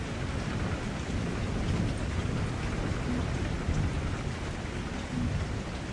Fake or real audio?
real